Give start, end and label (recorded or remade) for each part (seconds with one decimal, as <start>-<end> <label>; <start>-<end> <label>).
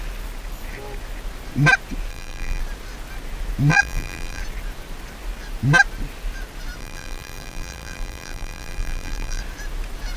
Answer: 0.0-2.1 recorded; 2.1-2.6 remade; 2.6-3.7 recorded; 3.7-4.4 remade; 4.4-6.8 recorded; 6.8-9.4 remade; 9.4-10.2 recorded